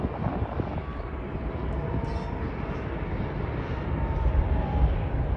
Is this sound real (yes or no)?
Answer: yes